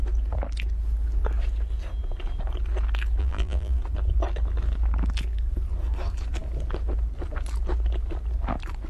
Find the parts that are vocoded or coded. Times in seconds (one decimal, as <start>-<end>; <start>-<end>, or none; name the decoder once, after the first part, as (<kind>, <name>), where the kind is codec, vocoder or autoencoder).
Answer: 3.2-3.8 (vocoder, BigVGAN v2)